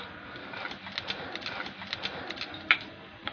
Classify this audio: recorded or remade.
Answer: recorded